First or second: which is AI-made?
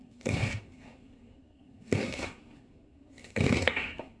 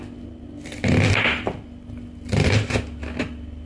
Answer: first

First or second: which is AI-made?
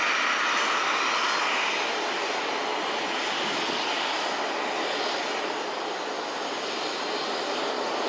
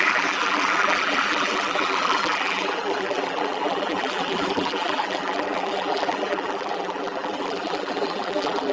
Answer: second